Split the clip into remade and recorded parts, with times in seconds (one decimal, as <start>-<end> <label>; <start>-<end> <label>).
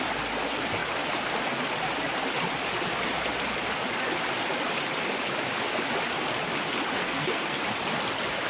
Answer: 0.0-7.0 recorded; 7.0-7.6 remade; 7.6-8.5 recorded